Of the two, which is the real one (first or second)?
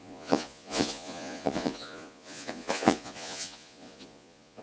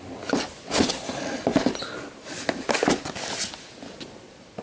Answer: second